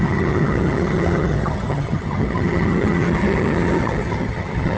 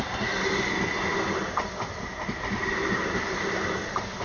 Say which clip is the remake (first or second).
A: first